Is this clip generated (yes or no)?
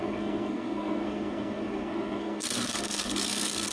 yes